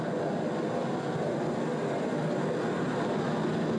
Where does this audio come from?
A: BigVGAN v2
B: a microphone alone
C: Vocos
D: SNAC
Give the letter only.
B